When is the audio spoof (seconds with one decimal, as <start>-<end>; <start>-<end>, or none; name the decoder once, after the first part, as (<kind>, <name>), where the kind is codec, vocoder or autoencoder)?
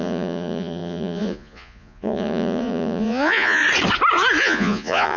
0.0-3.6 (vocoder, Vocos); 4.4-5.2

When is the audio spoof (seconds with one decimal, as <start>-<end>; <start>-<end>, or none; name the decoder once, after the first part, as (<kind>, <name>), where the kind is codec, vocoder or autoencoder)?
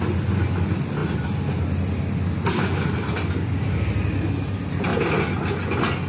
none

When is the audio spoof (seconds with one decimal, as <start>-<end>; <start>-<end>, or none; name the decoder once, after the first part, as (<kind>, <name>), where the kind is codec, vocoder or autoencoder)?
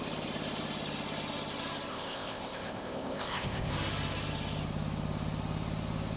1.9-3.7 (codec, ZipCodec)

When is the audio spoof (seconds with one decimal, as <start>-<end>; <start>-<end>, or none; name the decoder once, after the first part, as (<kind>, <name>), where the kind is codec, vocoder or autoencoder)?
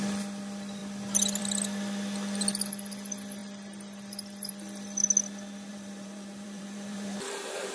5.7-7.7 (vocoder, BigVGAN v2)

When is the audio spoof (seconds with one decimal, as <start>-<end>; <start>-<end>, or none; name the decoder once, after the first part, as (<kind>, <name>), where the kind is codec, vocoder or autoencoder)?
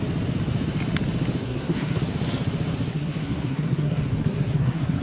1.4-2.0 (codec, SNAC); 2.9-5.0